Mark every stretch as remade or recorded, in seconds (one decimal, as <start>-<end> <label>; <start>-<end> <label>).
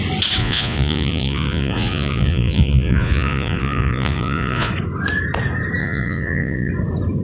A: 0.0-0.4 recorded; 0.4-4.7 remade; 4.7-5.8 recorded; 5.8-6.7 remade; 6.7-7.2 recorded